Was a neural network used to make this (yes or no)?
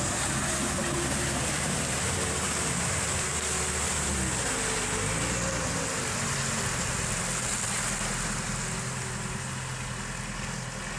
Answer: no